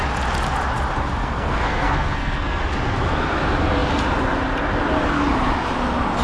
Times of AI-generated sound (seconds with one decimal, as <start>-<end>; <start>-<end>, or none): 1.2-2.6